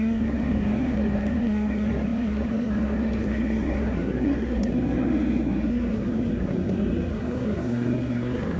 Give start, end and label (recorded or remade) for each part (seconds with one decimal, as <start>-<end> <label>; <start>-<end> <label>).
0.0-8.6 remade